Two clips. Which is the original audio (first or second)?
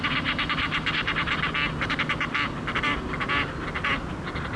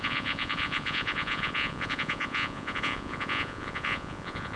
first